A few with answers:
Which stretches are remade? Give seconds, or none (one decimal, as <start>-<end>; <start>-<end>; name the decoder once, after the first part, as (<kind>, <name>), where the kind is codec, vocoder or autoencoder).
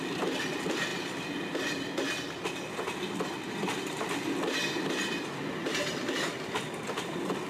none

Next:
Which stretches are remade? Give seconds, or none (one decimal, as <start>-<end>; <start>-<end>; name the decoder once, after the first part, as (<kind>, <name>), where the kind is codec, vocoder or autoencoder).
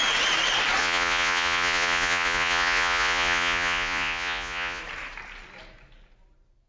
0.8-4.8 (vocoder, Vocos)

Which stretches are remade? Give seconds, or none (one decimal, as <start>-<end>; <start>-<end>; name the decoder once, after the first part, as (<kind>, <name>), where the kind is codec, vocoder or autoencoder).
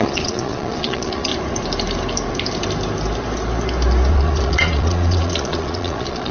0.0-1.3 (vocoder, Vocos); 4.1-6.3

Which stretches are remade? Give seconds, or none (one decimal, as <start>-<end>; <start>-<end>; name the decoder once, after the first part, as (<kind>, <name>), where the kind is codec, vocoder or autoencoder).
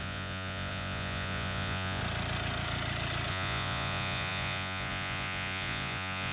0.0-2.0 (vocoder, Vocos); 3.3-6.3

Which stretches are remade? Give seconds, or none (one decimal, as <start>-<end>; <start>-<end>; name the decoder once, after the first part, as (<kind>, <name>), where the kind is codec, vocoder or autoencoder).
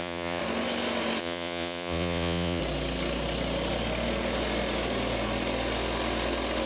0.0-0.4 (vocoder, Vocos); 1.2-2.6